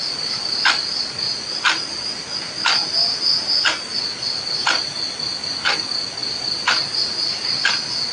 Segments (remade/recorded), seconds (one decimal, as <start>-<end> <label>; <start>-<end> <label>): 0.0-8.1 recorded